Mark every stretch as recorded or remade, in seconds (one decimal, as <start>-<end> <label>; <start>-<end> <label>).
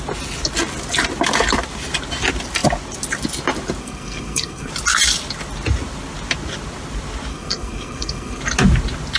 0.0-3.8 recorded; 3.8-4.7 remade; 4.7-7.3 recorded; 7.3-8.4 remade; 8.4-9.2 recorded